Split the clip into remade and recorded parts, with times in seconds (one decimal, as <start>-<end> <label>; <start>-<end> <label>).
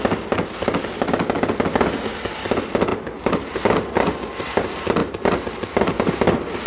0.0-6.7 recorded